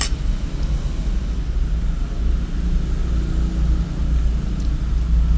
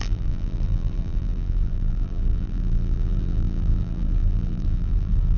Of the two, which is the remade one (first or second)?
second